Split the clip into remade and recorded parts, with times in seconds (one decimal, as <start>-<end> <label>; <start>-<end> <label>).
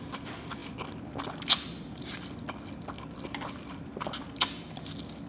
0.0-5.3 recorded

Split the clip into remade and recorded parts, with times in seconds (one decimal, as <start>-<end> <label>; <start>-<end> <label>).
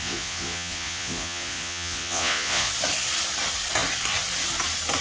0.0-2.7 remade; 2.7-5.0 recorded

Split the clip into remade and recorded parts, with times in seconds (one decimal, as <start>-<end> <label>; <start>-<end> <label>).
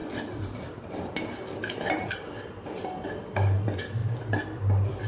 0.0-1.2 remade; 1.2-4.0 recorded; 4.0-5.1 remade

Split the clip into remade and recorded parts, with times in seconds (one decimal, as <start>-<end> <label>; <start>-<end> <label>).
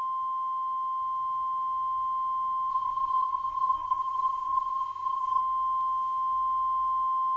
0.0-2.7 recorded; 2.7-5.4 remade; 5.4-7.4 recorded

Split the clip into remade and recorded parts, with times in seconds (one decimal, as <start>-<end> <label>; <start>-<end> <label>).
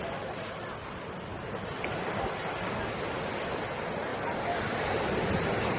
0.0-5.8 recorded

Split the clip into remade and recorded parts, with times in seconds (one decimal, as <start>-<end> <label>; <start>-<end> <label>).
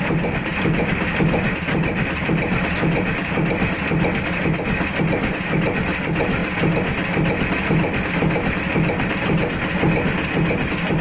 0.0-11.0 recorded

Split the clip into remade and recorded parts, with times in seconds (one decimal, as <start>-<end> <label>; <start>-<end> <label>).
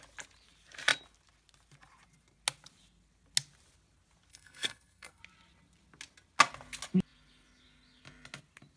0.0-4.3 recorded; 4.3-5.2 remade; 5.2-8.8 recorded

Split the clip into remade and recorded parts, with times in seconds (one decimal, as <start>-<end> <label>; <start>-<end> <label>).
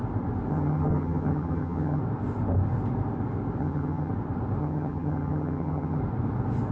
0.0-0.5 recorded; 0.5-2.0 remade; 2.0-3.6 recorded; 3.6-4.1 remade; 4.1-4.6 recorded; 4.6-6.0 remade; 6.0-6.7 recorded